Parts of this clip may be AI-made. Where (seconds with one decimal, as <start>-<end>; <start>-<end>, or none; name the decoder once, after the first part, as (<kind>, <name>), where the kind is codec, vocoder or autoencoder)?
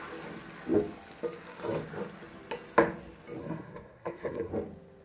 3.4-4.5 (codec, SNAC)